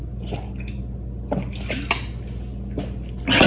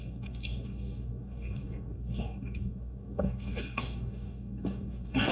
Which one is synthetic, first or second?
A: second